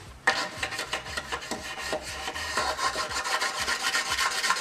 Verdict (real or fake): fake